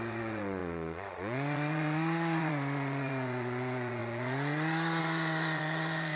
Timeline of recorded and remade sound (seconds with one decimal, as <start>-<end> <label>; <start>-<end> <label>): 0.0-6.2 remade

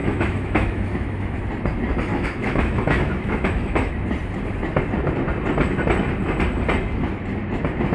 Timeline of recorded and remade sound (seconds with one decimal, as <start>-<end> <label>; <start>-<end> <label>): 0.0-1.4 remade; 1.4-2.1 recorded; 2.1-3.9 remade; 3.9-7.9 recorded

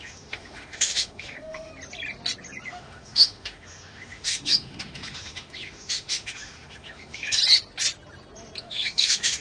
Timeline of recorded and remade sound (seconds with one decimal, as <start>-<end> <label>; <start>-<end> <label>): 0.0-1.7 remade; 1.7-2.7 recorded; 2.7-7.4 remade; 7.4-8.6 recorded; 8.6-9.4 remade

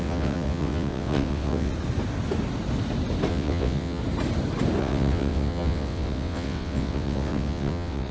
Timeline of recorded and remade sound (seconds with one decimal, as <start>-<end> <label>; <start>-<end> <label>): 0.0-1.7 remade; 1.7-3.3 recorded; 3.3-4.0 remade; 4.0-4.8 recorded; 4.8-8.1 remade

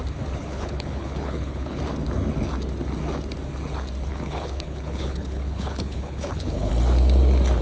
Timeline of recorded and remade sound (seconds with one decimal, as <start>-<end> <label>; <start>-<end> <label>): 0.0-0.4 recorded; 0.4-1.8 remade; 1.8-4.1 recorded; 4.1-6.7 remade; 6.7-7.6 recorded